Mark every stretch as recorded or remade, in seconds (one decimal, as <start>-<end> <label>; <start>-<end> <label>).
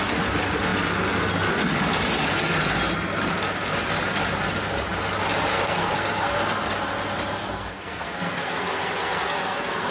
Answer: 0.0-5.5 recorded; 5.5-6.3 remade; 6.3-7.4 recorded; 7.4-9.9 remade